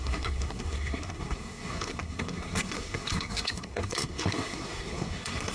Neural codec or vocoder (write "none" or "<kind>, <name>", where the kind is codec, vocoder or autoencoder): codec, SNAC